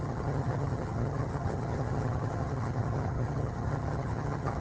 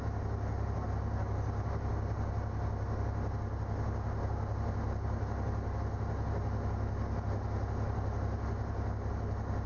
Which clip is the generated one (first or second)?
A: first